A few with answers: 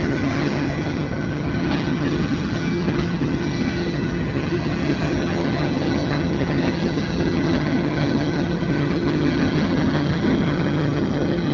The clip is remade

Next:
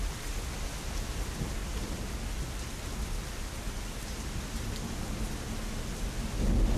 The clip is recorded